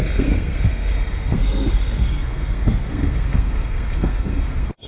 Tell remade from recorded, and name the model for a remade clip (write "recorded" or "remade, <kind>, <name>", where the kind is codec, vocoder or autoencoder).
remade, codec, SNAC